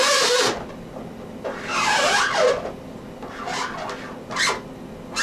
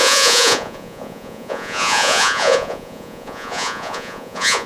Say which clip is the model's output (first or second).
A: second